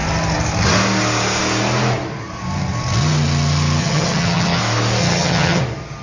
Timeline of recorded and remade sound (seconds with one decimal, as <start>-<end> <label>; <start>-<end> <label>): 0.0-3.8 recorded; 3.8-4.6 remade; 4.6-5.0 recorded; 5.0-5.6 remade; 5.6-6.0 recorded